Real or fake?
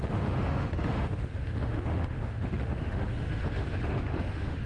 fake